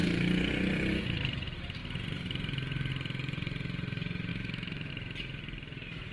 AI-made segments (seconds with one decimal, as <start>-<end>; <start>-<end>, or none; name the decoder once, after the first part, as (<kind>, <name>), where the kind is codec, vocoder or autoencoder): 4.3-4.9 (autoencoder, DAC-VAE)